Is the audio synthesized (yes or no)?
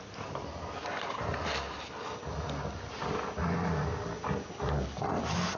no